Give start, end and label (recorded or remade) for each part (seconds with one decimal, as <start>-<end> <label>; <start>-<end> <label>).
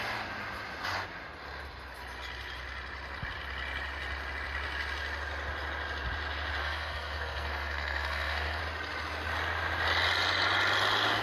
0.0-6.6 recorded; 6.6-8.6 remade; 8.6-11.2 recorded